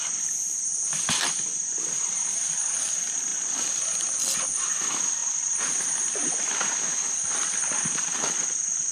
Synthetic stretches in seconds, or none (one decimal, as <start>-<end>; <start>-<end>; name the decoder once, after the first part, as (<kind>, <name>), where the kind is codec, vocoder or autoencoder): 0.0-8.9 (vocoder, BigVGAN v2)